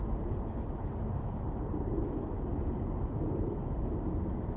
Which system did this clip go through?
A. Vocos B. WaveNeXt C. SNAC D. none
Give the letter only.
D